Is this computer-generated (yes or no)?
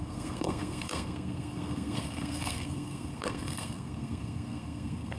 yes